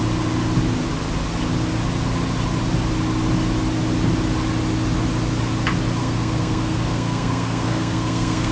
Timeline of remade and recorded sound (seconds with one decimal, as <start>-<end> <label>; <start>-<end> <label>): 0.0-6.0 recorded; 6.0-8.5 remade